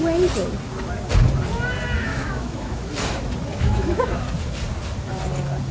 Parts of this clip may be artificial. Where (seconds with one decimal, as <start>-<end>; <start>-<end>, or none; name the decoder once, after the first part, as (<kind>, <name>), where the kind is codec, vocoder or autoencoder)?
2.1-2.9 (autoencoder, DAC-VAE); 3.5-4.2